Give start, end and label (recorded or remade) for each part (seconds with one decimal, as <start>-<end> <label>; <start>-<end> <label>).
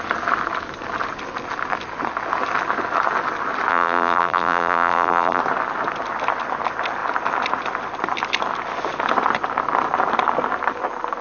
0.0-3.7 recorded; 3.7-5.4 remade; 5.4-11.2 recorded